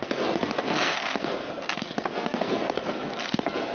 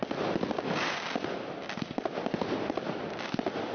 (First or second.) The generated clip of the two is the first